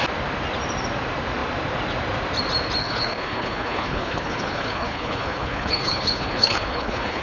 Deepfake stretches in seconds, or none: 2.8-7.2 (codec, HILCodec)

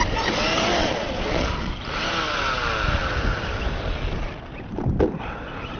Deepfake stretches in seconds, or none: 0.8-1.7 (vocoder, Vocos)

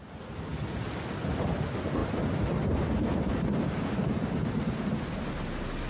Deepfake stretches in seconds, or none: none